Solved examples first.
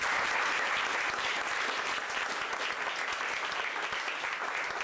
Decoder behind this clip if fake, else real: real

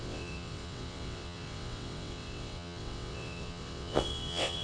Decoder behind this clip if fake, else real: fake, vocoder, WaveNeXt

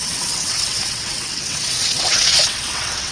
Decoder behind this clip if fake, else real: fake, vocoder, WaveNeXt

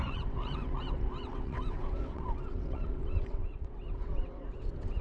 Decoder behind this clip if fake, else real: fake, vocoder, WaveNeXt